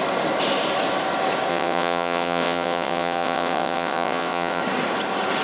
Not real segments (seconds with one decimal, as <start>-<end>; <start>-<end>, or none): 1.5-4.6